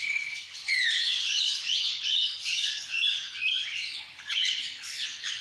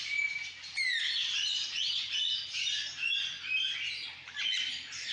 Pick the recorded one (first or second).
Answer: second